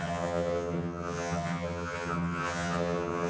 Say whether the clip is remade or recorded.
remade